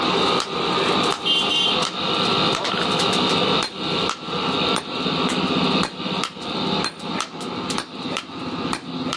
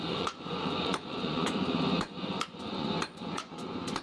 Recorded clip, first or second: first